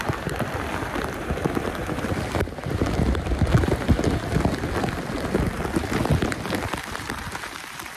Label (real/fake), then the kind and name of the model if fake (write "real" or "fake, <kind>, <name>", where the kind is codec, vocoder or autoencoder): fake, vocoder, BigVGAN v2